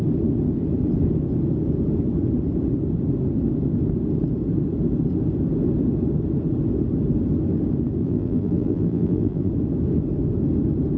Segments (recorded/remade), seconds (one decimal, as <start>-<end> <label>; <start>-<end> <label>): 0.0-8.0 recorded; 8.0-9.5 remade; 9.5-11.0 recorded